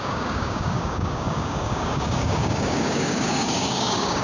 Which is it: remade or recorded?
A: remade